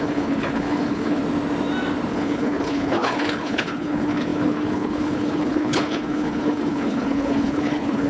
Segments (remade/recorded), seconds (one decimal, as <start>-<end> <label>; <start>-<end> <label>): 0.0-1.2 remade; 1.2-2.1 recorded; 2.1-8.1 remade